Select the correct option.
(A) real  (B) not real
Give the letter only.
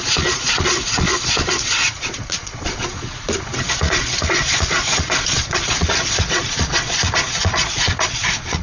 B